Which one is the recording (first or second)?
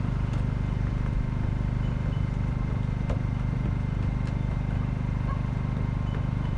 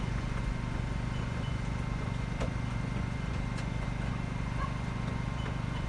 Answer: first